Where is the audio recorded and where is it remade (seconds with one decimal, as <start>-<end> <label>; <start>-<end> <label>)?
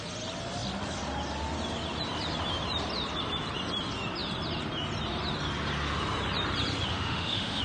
0.0-6.9 recorded; 6.9-7.6 remade